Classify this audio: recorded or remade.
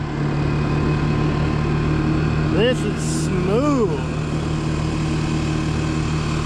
recorded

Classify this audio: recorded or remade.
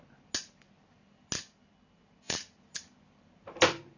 recorded